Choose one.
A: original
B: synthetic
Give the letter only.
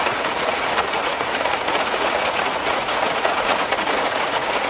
B